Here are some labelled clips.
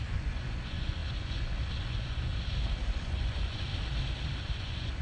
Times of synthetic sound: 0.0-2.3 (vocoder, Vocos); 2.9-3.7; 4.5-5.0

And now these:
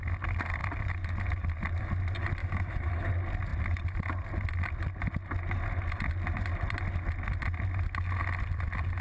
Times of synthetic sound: 2.4-3.1 (autoencoder, DAC-VAE)

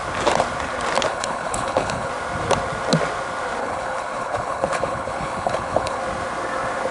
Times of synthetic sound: 1.1-2.1 (codec, HILCodec); 3.6-6.0

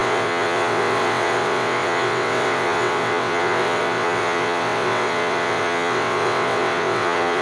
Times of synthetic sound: 0.0-7.4 (vocoder, WaveNeXt)

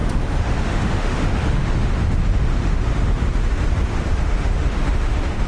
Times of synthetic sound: 0.0-3.3 (autoencoder, DAC-VAE); 3.9-5.5

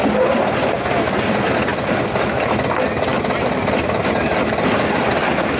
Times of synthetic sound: none